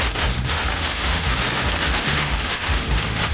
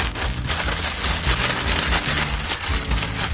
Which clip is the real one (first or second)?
second